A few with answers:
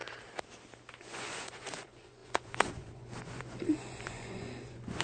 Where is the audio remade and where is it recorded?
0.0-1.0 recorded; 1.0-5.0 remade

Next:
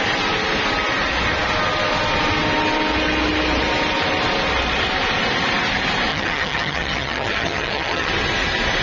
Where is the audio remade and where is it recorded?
0.0-6.1 recorded; 6.1-8.1 remade; 8.1-8.8 recorded

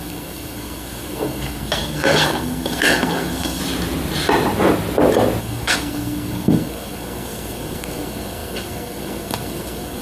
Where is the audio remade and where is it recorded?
0.0-3.6 remade; 3.6-5.4 recorded; 5.4-10.0 remade